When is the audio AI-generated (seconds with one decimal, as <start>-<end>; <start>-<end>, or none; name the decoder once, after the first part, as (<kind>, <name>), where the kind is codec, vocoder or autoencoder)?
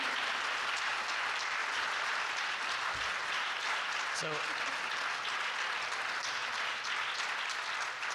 none